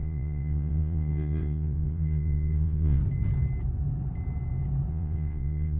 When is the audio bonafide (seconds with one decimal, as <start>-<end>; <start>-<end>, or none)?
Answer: 3.0-4.9